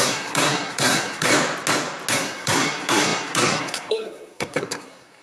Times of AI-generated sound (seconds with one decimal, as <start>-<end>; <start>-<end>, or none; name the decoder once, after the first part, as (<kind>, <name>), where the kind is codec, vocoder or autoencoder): 0.0-1.3 (codec, SNAC); 2.1-5.2